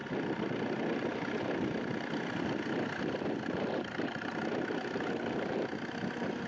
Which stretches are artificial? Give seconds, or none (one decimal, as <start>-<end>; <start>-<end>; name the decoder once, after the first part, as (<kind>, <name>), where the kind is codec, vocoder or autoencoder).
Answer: none